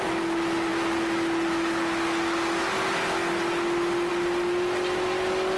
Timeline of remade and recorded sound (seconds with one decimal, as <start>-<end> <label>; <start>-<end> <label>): 0.0-5.6 recorded